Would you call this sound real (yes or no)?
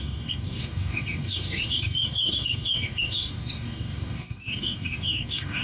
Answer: no